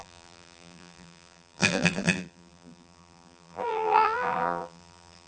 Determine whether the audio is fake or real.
fake